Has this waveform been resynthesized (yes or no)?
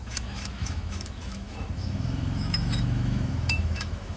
yes